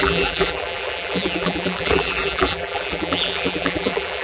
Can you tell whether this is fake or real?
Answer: fake